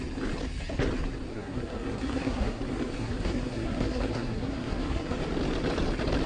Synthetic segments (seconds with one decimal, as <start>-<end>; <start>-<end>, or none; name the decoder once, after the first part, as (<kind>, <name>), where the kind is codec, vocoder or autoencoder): 1.3-2.6 (codec, SNAC); 3.0-5.2